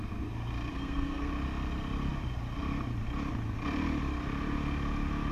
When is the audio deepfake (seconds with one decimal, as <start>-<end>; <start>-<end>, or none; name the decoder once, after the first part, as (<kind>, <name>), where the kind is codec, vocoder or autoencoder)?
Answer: 0.7-1.3 (codec, SNAC)

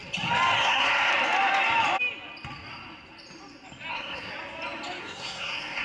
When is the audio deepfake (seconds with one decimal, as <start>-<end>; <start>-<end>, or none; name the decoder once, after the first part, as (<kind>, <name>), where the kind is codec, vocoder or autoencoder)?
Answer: 0.6-1.1 (codec, SNAC); 3.9-4.3; 5.0-5.8

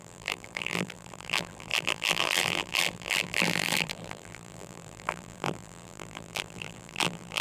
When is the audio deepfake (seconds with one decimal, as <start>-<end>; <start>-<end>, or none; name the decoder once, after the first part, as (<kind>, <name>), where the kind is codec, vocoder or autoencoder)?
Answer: 0.0-7.4 (vocoder, BigVGAN v2)